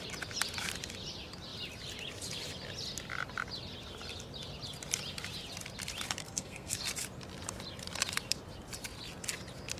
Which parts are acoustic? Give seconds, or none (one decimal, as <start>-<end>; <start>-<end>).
0.0-6.2; 6.8-9.8